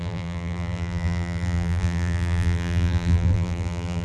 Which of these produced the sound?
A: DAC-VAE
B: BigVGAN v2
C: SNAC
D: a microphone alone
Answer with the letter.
B